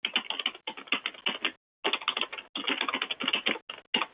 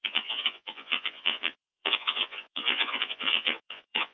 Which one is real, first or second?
first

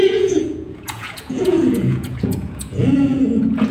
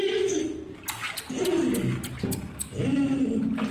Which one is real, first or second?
second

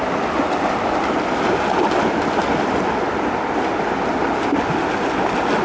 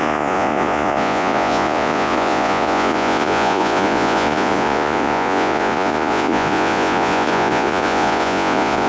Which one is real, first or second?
first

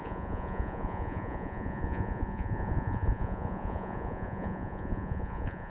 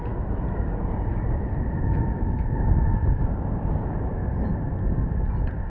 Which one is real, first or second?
second